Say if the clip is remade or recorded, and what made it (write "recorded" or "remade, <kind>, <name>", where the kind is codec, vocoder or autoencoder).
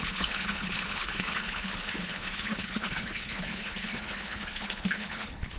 remade, codec, HILCodec